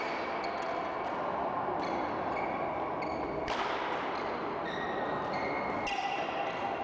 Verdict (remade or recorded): recorded